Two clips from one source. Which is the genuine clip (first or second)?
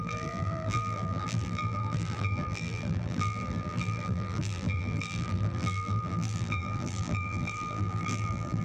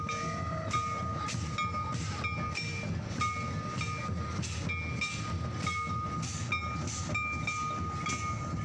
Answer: second